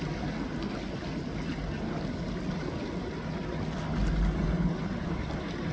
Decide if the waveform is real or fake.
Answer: real